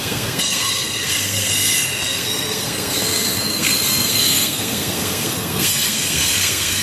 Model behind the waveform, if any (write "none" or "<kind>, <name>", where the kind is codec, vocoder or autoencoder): codec, SNAC